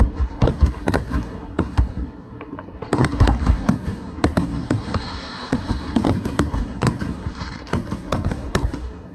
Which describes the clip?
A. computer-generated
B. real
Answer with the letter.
A